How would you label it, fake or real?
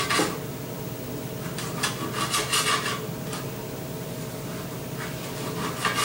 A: real